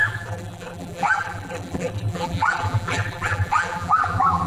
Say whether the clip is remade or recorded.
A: remade